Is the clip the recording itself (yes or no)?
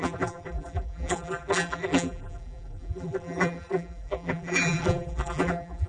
no